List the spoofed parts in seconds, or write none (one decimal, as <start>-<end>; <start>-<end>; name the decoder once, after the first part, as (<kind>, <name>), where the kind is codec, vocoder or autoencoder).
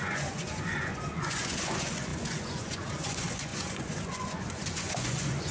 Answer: 0.0-5.5 (vocoder, Vocos)